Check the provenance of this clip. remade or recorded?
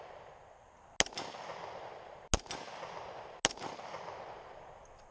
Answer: recorded